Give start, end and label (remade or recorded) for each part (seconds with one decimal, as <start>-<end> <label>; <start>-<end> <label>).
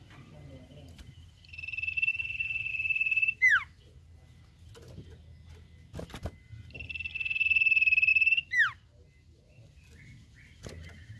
0.0-11.2 recorded